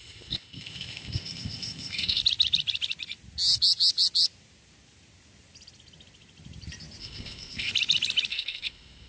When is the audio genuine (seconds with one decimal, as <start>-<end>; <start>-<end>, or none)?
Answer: 2.2-7.0; 7.7-8.3